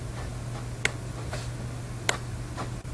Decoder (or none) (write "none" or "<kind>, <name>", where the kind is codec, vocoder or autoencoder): none